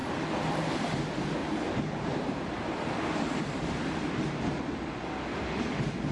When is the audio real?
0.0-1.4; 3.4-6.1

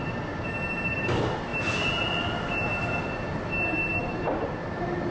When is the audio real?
0.0-1.5; 2.1-3.9

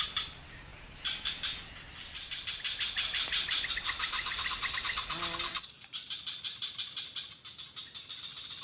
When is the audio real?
0.0-0.7; 1.3-1.9; 6.7-7.8

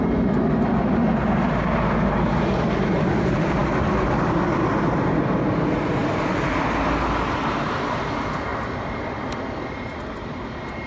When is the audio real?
0.0-10.9

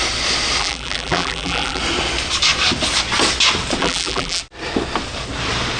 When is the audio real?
0.0-0.6; 1.8-3.8; 4.4-5.8

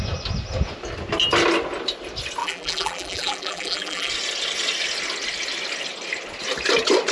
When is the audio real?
0.0-2.4; 4.1-7.1

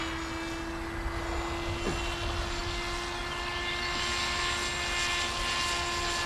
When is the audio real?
0.0-6.3